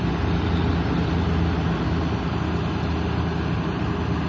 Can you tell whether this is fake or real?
real